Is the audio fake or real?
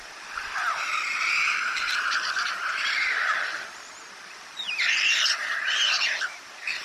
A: fake